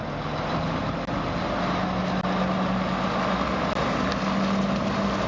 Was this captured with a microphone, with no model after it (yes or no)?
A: yes